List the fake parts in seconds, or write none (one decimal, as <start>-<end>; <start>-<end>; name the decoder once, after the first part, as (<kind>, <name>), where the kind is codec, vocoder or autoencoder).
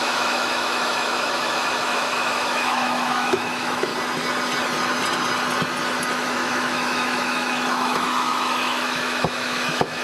0.0-3.9 (autoencoder, DAC-VAE); 6.1-10.0